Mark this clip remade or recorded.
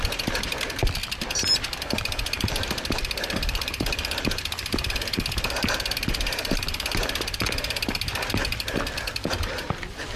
remade